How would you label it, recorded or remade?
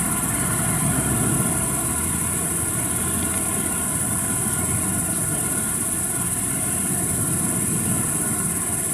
recorded